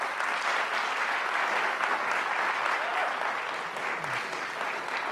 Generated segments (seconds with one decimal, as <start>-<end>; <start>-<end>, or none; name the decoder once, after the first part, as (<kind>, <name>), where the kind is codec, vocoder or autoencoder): none